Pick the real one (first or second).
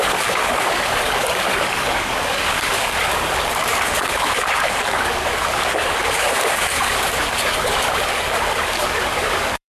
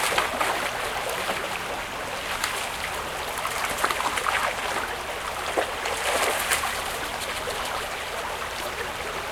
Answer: second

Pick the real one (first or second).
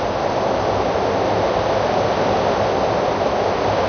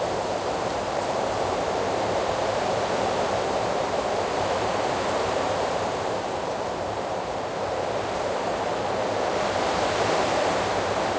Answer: first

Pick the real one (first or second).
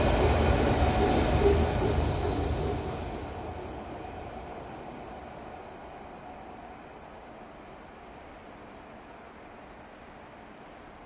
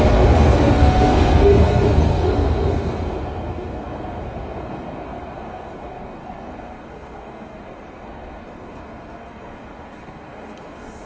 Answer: first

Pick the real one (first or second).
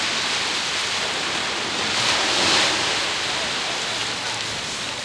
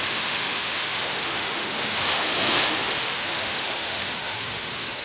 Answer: first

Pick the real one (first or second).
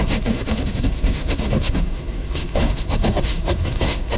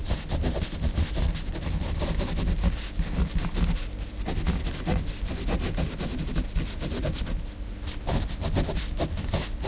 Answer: second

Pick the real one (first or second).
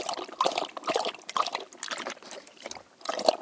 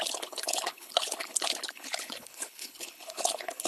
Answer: first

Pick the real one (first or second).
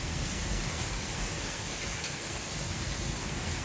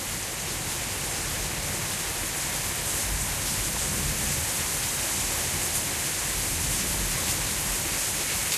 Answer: second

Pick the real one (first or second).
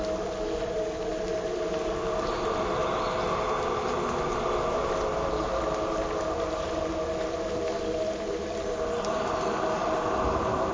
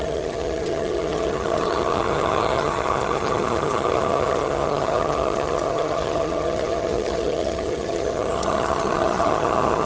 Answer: first